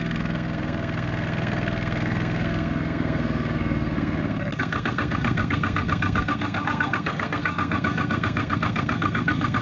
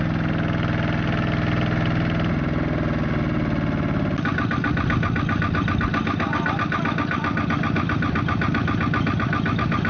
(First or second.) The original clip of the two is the second